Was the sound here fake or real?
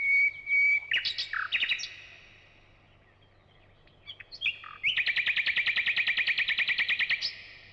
real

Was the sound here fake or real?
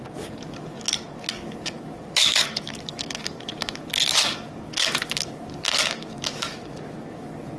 fake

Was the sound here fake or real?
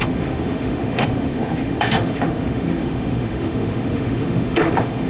fake